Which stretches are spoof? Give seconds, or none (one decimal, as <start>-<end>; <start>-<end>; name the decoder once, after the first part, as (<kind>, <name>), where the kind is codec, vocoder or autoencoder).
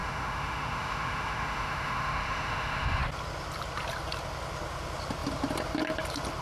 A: 0.0-3.0 (autoencoder, DAC-VAE)